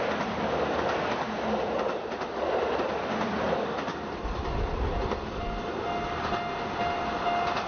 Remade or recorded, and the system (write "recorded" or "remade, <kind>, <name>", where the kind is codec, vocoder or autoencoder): recorded